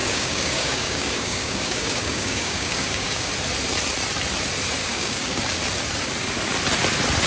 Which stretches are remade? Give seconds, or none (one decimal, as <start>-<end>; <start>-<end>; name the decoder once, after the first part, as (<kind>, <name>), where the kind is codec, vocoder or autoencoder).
0.0-3.3 (codec, DAC); 4.8-5.4